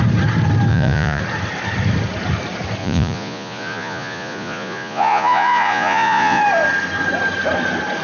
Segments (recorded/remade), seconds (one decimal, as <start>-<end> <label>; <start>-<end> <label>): 0.0-0.7 recorded; 0.7-1.2 remade; 1.2-2.8 recorded; 2.8-6.4 remade; 6.4-8.0 recorded